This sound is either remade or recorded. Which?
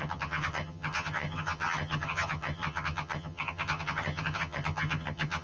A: remade